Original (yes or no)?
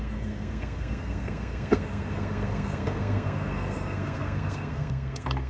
no